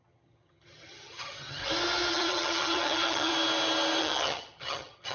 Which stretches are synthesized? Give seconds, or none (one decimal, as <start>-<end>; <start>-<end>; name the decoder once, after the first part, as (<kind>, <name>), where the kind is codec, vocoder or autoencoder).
0.0-1.6 (vocoder, HiFi-GAN); 2.1-3.3; 4.0-5.1